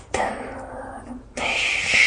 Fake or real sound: real